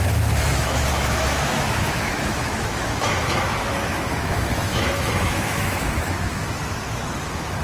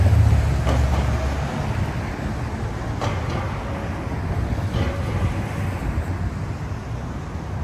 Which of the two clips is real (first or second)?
second